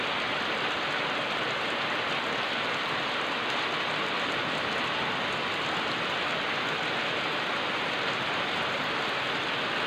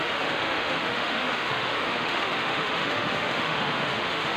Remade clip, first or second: second